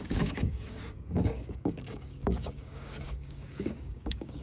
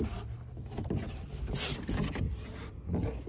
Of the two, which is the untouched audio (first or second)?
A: second